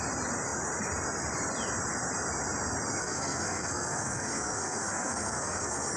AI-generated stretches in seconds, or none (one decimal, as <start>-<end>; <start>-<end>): 3.0-6.0